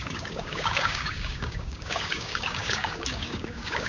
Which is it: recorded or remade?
remade